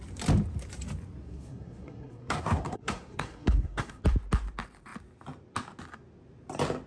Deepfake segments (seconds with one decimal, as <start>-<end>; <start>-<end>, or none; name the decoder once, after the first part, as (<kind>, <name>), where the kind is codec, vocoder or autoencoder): 1.2-4.0 (codec, SNAC)